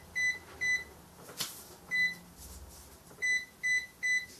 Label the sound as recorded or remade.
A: recorded